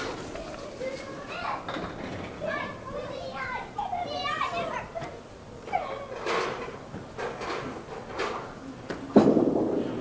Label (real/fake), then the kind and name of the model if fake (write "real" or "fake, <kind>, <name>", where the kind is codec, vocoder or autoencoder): real